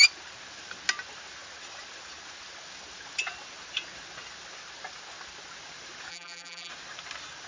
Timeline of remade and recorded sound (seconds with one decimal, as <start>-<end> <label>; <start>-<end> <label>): 0.0-6.1 recorded; 6.1-6.7 remade; 6.7-7.5 recorded